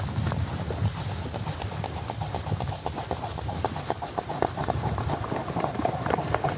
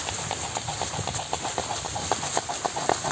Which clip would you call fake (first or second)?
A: first